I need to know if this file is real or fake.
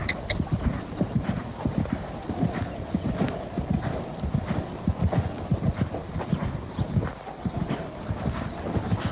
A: real